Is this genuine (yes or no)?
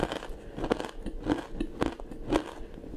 yes